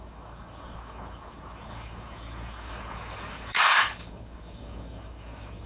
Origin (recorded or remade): remade